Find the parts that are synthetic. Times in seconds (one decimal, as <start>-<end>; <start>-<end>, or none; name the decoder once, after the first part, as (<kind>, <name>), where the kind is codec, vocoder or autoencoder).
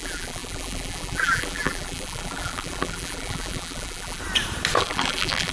0.0-4.2 (vocoder, BigVGAN v2); 4.8-5.5